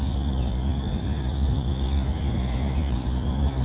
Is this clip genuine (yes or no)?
no